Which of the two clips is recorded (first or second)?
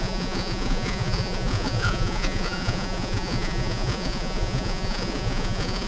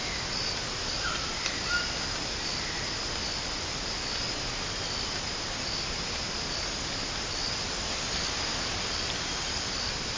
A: second